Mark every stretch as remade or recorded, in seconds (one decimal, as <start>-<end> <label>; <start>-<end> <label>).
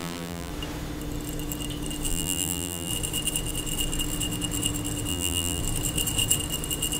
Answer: 0.0-0.5 remade; 0.5-2.1 recorded; 2.1-2.9 remade; 2.9-5.1 recorded; 5.1-5.6 remade; 5.6-7.0 recorded